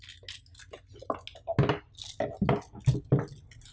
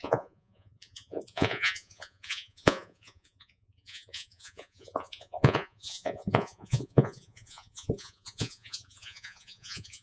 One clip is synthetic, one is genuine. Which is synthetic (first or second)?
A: second